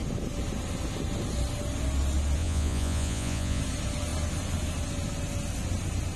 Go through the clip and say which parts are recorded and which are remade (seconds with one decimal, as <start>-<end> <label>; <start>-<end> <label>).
0.0-2.4 recorded; 2.4-3.6 remade; 3.6-6.2 recorded